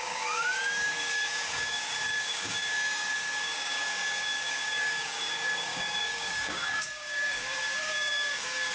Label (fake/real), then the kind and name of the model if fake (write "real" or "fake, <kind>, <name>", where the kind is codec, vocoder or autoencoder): fake, codec, DAC